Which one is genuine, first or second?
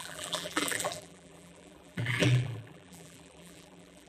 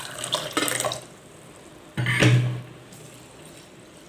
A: second